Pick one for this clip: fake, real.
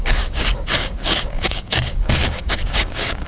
fake